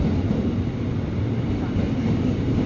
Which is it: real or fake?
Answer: real